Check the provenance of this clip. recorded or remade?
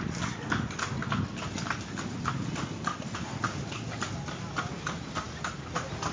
recorded